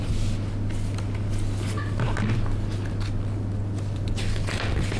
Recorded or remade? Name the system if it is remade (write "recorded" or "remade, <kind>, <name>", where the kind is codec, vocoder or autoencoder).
recorded